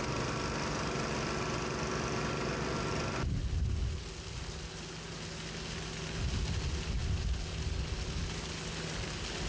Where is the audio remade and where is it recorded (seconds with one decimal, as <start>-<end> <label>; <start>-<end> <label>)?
0.0-9.5 recorded